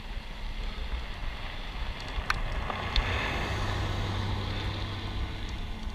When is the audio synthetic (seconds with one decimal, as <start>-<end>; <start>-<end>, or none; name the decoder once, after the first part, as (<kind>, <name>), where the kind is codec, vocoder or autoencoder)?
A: none